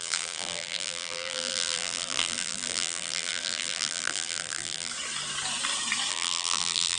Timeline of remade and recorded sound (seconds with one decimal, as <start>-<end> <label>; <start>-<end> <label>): 0.0-4.9 remade; 4.9-6.1 recorded; 6.1-7.0 remade